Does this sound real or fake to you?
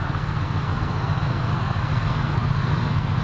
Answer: fake